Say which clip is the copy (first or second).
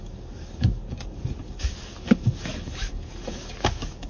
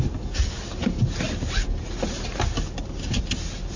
first